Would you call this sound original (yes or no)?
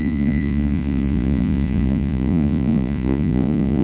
no